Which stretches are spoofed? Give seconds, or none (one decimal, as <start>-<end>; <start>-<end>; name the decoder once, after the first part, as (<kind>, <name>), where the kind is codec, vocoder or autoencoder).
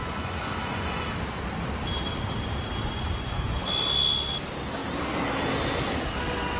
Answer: 0.0-1.1 (vocoder, Vocos); 2.8-3.7